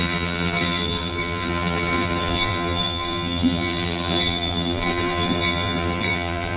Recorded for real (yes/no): no